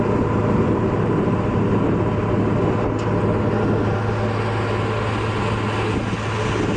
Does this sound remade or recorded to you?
recorded